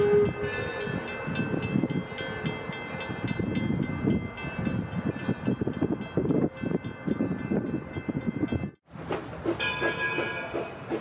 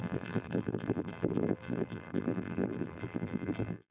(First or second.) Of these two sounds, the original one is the first